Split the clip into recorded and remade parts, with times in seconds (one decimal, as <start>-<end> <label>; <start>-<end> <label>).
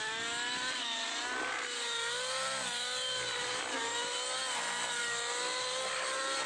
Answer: 0.0-6.5 recorded